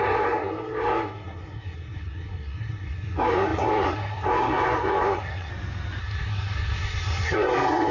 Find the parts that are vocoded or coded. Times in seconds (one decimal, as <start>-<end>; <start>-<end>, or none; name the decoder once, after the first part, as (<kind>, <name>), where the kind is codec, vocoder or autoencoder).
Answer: 0.0-5.5 (codec, SNAC); 6.0-7.9